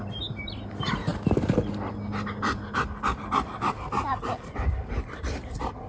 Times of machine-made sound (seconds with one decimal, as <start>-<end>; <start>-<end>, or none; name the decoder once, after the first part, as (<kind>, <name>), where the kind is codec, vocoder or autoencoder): none